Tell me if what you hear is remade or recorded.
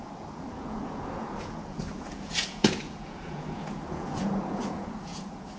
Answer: remade